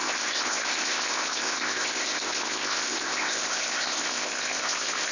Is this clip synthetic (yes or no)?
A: yes